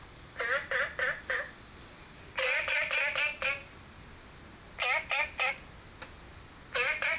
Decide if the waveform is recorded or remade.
recorded